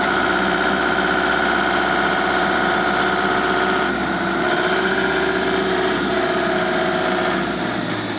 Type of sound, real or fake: real